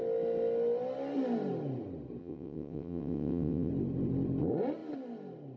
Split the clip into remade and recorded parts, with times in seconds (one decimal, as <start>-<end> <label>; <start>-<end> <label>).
0.0-2.2 recorded; 2.2-3.7 remade; 3.7-5.6 recorded